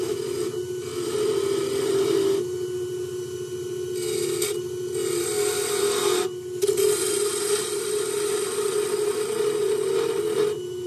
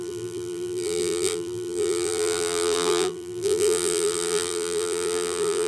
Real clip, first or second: first